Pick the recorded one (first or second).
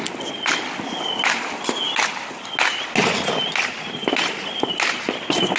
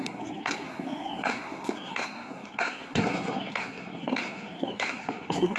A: first